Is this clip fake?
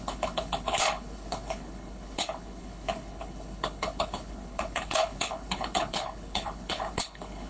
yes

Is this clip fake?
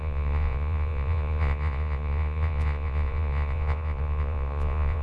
yes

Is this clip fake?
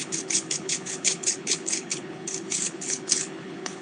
yes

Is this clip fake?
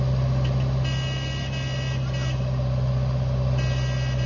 no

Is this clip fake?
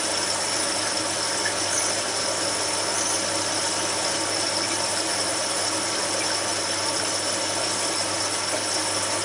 no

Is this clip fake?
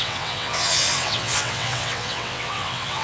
yes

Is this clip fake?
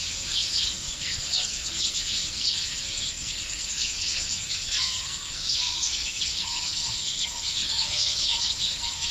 yes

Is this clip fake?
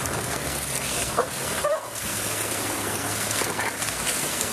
yes